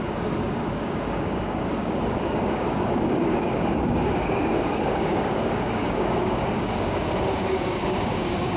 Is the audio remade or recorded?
remade